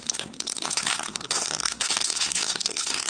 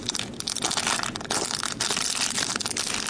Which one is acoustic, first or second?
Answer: second